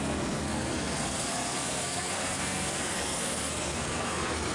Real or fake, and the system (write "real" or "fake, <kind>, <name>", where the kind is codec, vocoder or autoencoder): fake, codec, SNAC